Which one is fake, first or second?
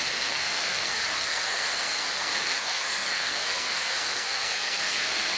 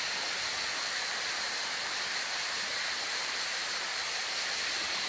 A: first